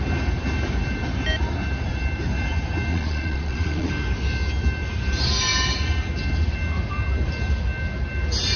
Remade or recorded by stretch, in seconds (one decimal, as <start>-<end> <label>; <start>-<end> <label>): 0.0-2.9 recorded; 2.9-3.9 remade; 3.9-8.6 recorded

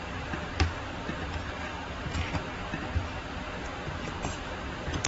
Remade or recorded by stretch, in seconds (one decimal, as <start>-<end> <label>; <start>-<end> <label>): 0.0-1.7 recorded; 1.7-5.1 remade

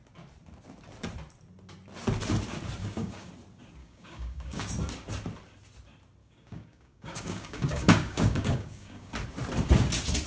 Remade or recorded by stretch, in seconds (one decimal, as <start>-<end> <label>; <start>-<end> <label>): 0.0-2.8 recorded; 2.8-3.3 remade; 3.3-3.8 recorded; 3.8-4.7 remade; 4.7-6.2 recorded; 6.2-9.1 remade; 9.1-10.3 recorded

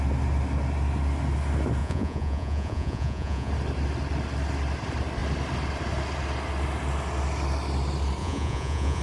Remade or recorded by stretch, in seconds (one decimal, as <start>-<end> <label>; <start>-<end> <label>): 0.0-1.8 recorded; 1.8-3.5 remade; 3.5-8.2 recorded; 8.2-9.0 remade

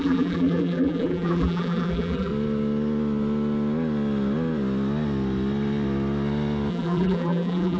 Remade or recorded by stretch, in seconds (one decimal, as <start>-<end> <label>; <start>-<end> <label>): 0.0-2.3 remade; 2.3-6.7 recorded; 6.7-7.8 remade

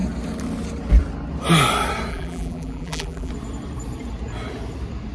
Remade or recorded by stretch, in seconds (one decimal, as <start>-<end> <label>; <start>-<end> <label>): 0.0-2.1 recorded; 2.1-3.3 remade; 3.3-5.1 recorded

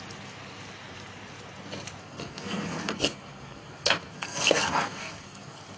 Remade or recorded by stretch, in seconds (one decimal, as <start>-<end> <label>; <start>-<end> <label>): 0.0-2.0 recorded; 2.0-5.8 remade